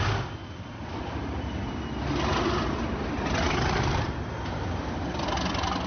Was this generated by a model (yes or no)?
no